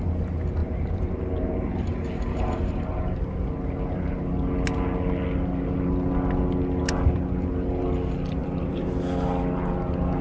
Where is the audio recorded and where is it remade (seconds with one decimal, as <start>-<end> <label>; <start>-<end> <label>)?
0.0-0.6 recorded; 0.6-2.8 remade; 2.8-8.4 recorded; 8.4-9.0 remade; 9.0-10.2 recorded